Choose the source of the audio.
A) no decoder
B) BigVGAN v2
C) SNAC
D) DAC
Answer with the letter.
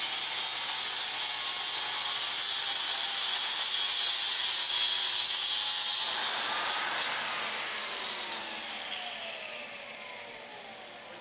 A